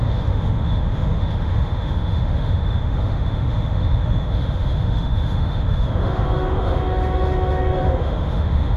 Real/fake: fake